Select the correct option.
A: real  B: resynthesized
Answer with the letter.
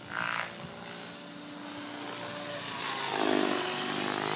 A